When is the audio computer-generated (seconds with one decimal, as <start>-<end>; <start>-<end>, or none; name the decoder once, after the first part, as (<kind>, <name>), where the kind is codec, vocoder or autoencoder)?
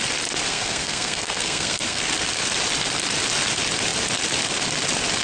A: 0.5-2.0 (codec, SNAC)